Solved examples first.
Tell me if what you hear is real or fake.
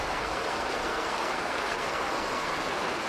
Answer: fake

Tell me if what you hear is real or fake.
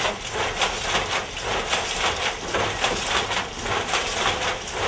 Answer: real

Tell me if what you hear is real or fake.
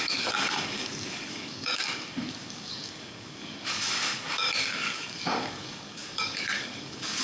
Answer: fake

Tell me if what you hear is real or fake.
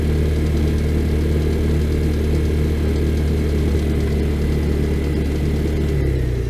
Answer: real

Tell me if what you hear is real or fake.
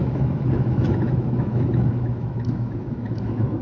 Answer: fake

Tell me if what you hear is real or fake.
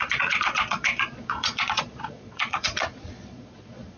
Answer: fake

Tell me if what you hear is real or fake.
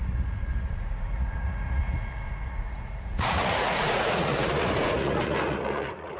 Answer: fake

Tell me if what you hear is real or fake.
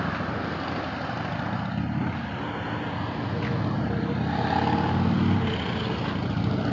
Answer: real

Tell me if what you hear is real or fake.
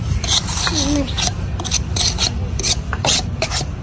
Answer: real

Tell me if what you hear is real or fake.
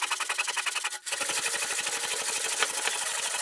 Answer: real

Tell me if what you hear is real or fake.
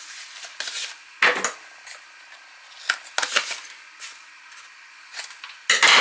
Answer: real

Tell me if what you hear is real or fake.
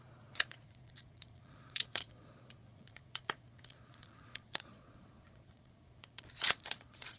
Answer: fake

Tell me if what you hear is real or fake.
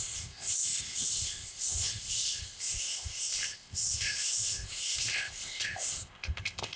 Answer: fake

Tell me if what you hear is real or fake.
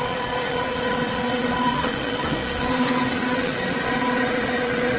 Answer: fake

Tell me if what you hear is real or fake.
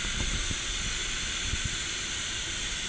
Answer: real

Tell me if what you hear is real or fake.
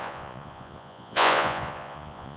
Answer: fake